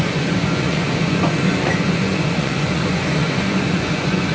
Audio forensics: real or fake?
fake